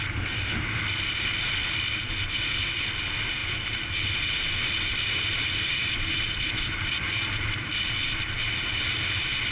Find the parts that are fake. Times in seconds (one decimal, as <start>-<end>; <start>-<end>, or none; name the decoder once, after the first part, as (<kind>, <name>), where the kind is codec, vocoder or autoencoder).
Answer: 4.9-7.7 (vocoder, BigVGAN v2)